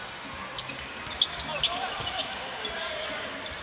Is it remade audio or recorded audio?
recorded